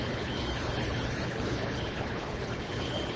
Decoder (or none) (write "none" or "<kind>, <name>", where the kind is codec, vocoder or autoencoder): codec, HILCodec